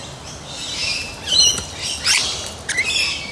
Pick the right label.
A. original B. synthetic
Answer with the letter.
A